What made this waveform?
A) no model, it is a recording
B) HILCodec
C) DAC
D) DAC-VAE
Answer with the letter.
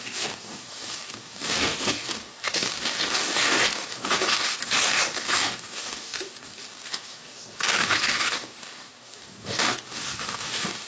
C